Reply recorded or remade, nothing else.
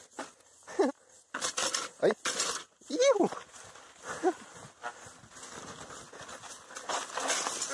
recorded